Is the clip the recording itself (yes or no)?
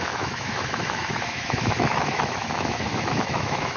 no